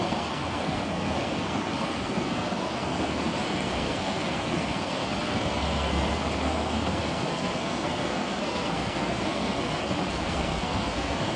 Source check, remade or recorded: remade